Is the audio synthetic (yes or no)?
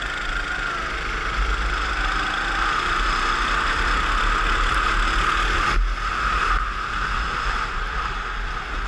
no